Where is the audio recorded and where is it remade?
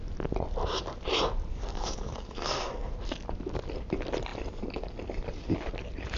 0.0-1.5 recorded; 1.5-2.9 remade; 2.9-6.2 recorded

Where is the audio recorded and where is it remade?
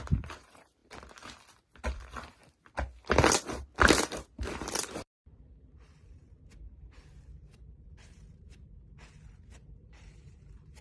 0.0-0.8 remade; 0.8-1.6 recorded; 1.6-2.4 remade; 2.4-3.6 recorded; 3.6-10.8 remade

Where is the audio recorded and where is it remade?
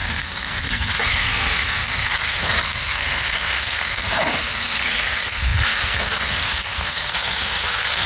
0.0-8.1 remade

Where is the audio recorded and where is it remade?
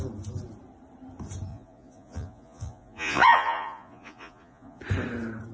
0.0-1.5 recorded; 1.5-4.8 remade; 4.8-5.5 recorded